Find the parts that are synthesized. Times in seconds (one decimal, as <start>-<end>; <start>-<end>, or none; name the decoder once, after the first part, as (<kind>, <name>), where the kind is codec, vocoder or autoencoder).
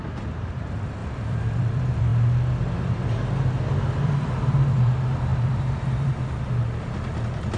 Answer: 0.0-2.1 (vocoder, BigVGAN v2); 3.5-7.6